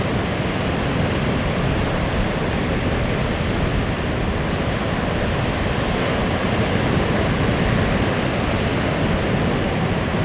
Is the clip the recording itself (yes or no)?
yes